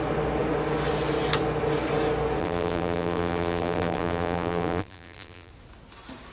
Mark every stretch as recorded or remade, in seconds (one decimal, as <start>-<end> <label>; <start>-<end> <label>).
0.0-2.4 recorded; 2.4-5.5 remade; 5.5-6.3 recorded